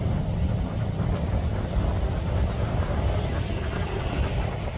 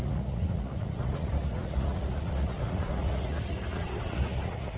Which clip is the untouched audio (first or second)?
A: first